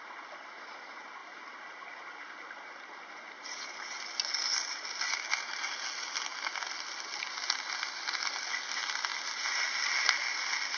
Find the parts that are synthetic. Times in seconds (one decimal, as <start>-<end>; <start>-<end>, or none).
1.2-4.0